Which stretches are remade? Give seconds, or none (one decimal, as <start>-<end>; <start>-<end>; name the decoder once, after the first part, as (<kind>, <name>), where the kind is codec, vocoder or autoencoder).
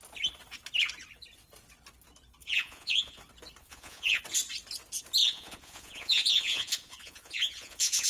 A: 2.4-3.2 (vocoder, Vocos); 3.6-4.2; 5.2-8.1